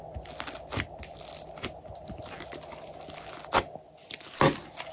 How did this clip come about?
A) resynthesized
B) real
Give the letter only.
B